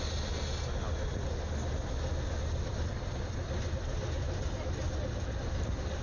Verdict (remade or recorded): recorded